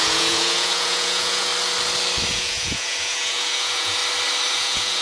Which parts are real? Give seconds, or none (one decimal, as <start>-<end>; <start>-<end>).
1.5-2.3; 4.0-4.5